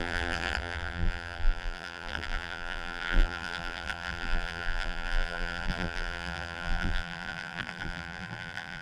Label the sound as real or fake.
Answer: fake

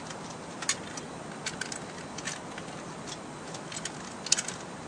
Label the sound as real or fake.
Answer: real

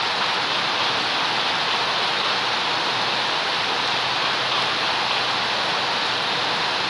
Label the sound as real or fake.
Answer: real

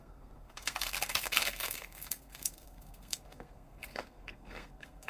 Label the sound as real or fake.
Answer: fake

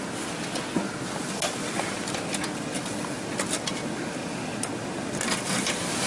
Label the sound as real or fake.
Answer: real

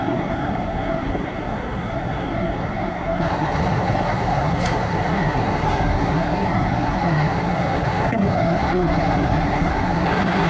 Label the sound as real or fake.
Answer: fake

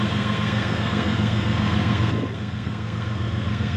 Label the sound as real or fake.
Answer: fake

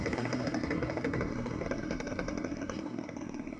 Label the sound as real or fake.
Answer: fake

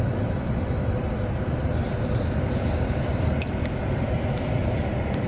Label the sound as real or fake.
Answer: real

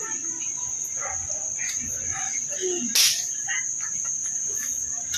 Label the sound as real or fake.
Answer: real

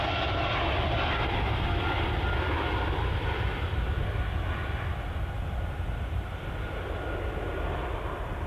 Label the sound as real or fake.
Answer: real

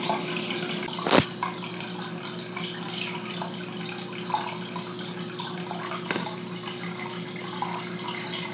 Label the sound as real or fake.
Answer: real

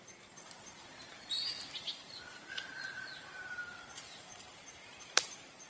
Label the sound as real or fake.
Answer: fake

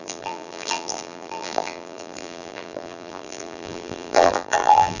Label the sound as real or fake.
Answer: fake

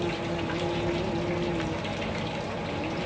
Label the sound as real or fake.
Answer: real